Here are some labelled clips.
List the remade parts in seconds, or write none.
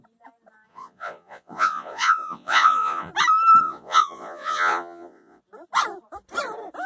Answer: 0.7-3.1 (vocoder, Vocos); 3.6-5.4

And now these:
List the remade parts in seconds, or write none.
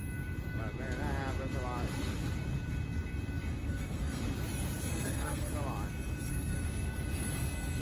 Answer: 3.5-4.2 (codec, SNAC); 4.9-5.5; 6.3-7.1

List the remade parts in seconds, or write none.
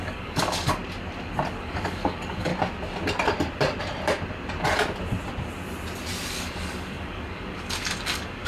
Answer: 0.0-0.8 (codec, DAC); 1.6-2.5; 6.3-8.5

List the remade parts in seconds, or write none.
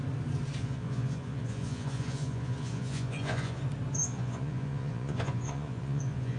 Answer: 0.6-3.6 (vocoder, Vocos); 4.0-6.4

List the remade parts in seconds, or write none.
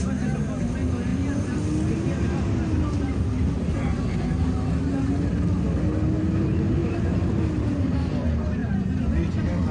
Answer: 8.6-9.1 (vocoder, BigVGAN v2)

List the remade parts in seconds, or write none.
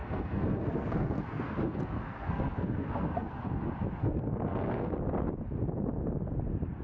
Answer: 0.0-3.5 (codec, SNAC); 4.0-4.9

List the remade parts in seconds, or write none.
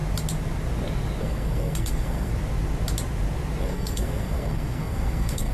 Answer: 1.2-2.3 (codec, SNAC); 3.6-5.5